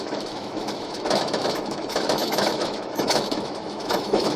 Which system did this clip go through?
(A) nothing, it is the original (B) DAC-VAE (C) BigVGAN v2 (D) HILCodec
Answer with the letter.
B